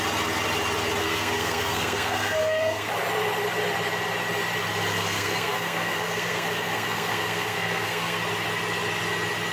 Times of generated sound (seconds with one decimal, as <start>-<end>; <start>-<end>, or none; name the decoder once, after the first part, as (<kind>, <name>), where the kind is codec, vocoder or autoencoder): 1.0-2.9 (codec, SNAC); 4.9-8.2